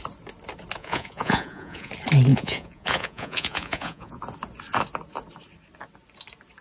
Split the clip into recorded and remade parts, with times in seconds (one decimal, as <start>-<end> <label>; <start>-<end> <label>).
0.0-0.8 recorded; 0.8-1.9 remade; 1.9-2.3 recorded; 2.3-4.2 remade; 4.2-6.6 recorded